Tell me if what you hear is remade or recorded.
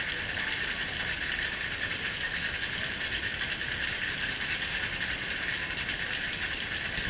recorded